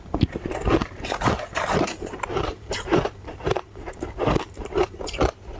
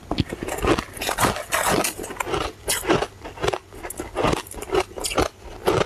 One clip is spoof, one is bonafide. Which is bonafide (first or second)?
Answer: second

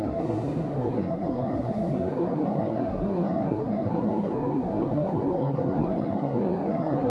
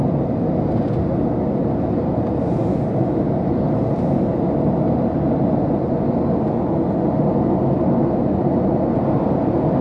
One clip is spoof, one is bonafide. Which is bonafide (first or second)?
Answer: second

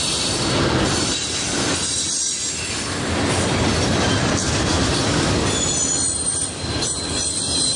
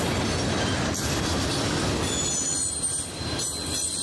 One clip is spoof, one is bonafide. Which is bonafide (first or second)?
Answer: second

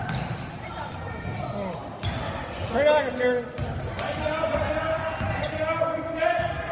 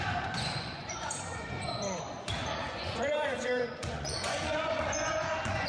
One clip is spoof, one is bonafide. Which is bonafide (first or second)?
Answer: first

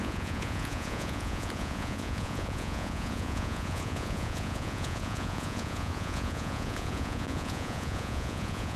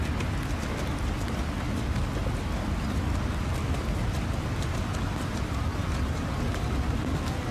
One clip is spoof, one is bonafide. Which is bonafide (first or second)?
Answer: second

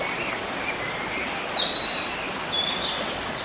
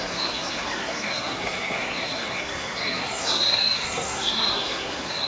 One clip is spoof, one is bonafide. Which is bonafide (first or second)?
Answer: first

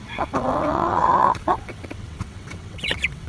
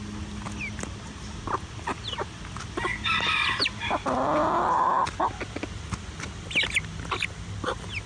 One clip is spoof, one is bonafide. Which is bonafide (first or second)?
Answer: second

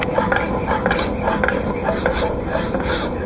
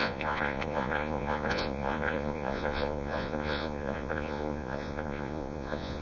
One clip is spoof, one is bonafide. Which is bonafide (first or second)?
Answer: first